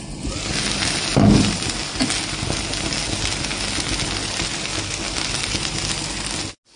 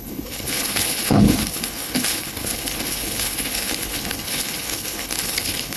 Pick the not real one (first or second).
second